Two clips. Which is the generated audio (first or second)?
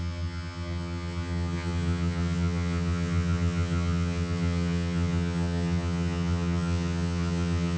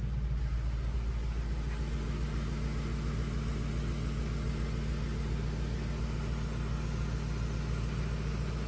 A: first